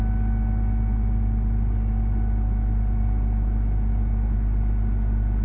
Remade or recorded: recorded